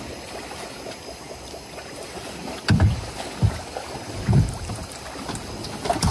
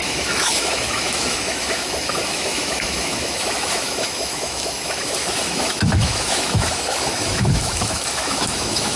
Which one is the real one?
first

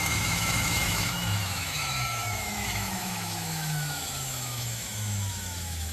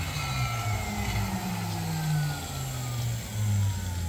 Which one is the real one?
second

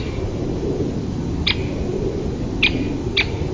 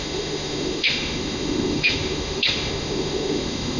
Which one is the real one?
first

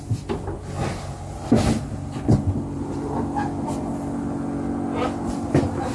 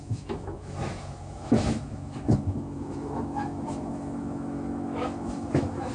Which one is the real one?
first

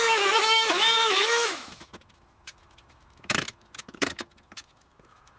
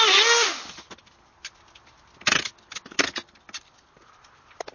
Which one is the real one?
second